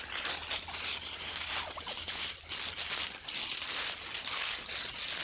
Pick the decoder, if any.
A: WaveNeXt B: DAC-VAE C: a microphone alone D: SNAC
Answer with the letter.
C